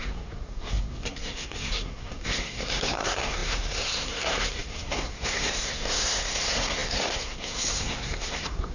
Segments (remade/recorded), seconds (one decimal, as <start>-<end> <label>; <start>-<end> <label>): 0.0-8.7 remade